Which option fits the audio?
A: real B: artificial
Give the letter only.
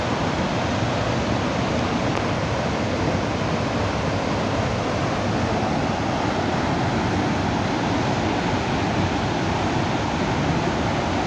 A